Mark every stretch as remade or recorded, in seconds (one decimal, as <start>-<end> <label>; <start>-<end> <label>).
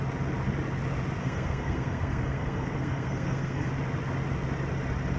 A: 0.0-1.2 recorded; 1.2-3.7 remade; 3.7-5.2 recorded